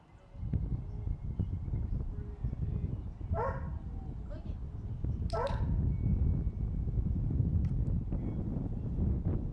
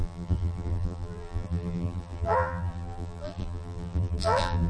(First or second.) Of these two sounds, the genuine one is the first